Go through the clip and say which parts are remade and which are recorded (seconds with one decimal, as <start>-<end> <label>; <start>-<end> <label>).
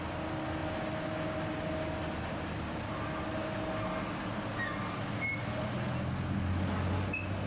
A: 0.0-7.5 recorded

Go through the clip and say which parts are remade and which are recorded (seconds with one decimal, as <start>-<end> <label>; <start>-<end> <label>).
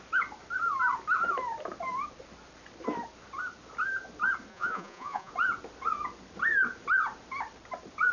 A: 0.0-4.5 recorded; 4.5-5.3 remade; 5.3-8.1 recorded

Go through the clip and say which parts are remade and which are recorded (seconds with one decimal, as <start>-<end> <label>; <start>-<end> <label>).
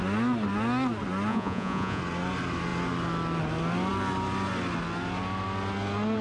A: 0.0-1.3 recorded; 1.3-2.0 remade; 2.0-6.2 recorded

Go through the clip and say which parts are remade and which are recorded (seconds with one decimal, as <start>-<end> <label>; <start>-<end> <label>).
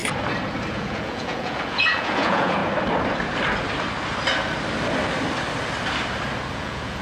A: 0.0-0.7 recorded; 0.7-2.6 remade; 2.6-6.5 recorded; 6.5-7.0 remade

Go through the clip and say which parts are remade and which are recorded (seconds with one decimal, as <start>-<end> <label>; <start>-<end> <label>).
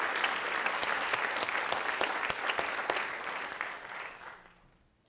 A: 0.0-5.1 recorded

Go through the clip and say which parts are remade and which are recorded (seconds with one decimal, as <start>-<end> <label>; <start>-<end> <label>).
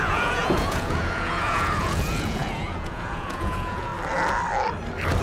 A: 0.0-3.9 remade; 3.9-5.2 recorded